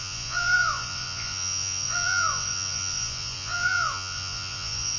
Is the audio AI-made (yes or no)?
yes